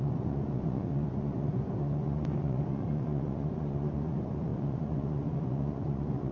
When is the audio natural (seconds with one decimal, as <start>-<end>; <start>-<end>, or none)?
none